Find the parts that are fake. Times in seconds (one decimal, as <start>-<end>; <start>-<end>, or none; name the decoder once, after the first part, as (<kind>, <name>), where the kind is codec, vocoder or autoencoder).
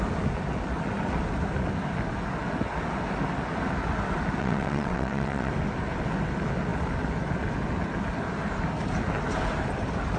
4.4-5.5 (vocoder, WaveNeXt)